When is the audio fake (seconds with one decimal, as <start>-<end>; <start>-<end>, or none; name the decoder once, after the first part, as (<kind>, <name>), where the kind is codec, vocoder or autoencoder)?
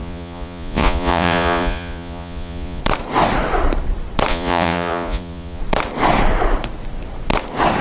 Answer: 0.0-2.8 (vocoder, Vocos); 4.3-5.6